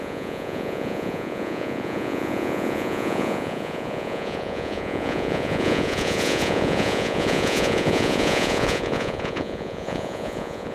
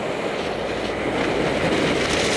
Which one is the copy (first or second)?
first